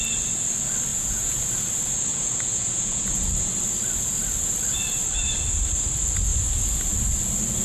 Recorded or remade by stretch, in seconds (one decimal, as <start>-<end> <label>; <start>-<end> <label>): 0.0-0.9 recorded; 0.9-1.5 remade; 1.5-2.1 recorded; 2.1-3.3 remade; 3.3-7.6 recorded